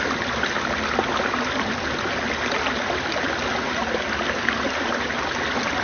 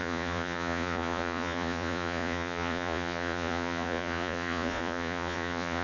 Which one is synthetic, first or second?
second